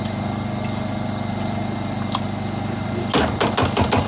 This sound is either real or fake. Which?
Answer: real